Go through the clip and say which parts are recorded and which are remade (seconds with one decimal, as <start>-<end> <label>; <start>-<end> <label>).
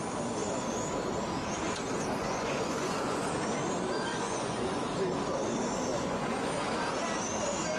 0.0-2.2 recorded; 2.2-3.3 remade; 3.3-4.1 recorded; 4.1-4.8 remade; 4.8-5.9 recorded; 5.9-6.5 remade; 6.5-7.8 recorded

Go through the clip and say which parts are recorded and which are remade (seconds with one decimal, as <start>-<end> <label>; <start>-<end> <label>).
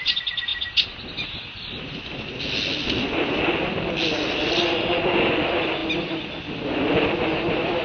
0.0-7.8 recorded